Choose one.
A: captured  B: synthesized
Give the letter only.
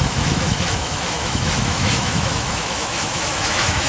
B